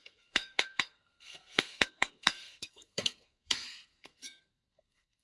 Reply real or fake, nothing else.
fake